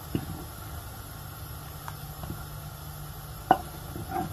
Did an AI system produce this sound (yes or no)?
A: no